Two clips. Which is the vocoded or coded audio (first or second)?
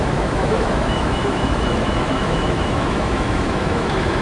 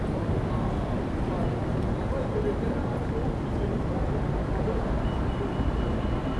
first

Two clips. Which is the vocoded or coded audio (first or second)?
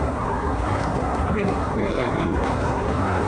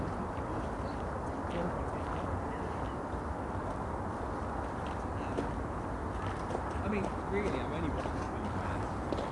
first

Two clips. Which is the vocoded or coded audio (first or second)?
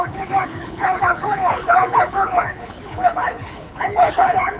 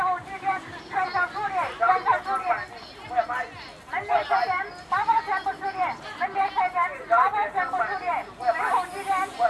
first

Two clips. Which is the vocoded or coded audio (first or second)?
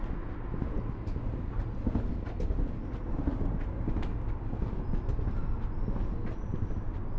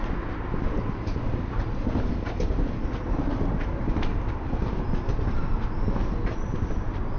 second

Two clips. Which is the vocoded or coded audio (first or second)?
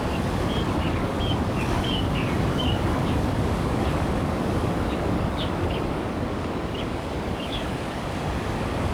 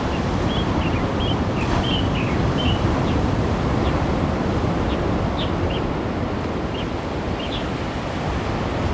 first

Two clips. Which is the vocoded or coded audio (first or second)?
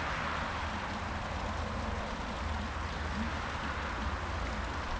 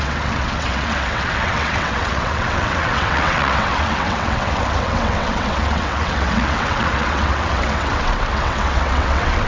second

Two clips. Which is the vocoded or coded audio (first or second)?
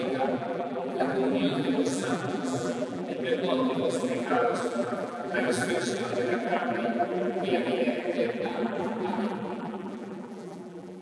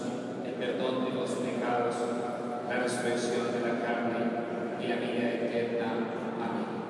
first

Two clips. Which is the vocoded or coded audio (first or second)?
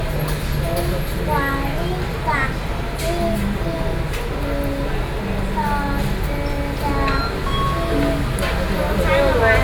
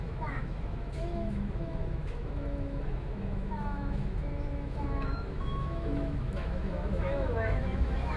second